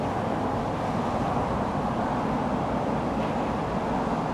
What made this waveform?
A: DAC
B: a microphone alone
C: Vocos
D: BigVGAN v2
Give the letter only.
B